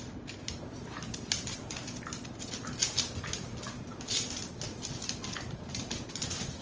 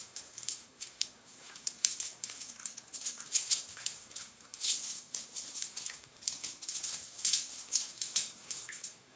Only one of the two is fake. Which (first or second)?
second